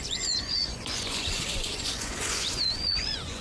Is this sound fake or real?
fake